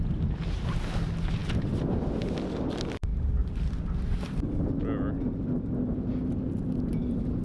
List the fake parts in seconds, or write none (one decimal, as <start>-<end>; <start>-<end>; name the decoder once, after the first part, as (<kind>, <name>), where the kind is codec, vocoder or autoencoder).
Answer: none

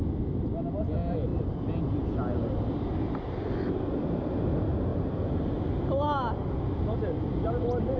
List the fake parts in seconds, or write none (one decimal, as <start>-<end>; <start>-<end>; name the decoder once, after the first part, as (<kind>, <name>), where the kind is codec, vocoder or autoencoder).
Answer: 4.9-5.5 (vocoder, BigVGAN v2)

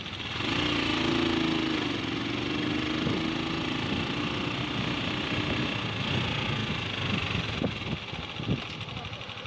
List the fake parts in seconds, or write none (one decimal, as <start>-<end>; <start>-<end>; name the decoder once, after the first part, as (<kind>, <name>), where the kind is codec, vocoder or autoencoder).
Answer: none

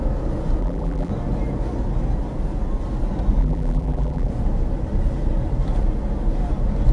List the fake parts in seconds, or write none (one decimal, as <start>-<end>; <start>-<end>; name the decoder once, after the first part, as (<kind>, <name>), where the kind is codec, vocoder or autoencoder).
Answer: 0.6-1.1 (vocoder, BigVGAN v2); 3.4-4.3